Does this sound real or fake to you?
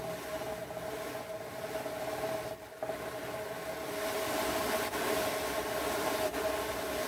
real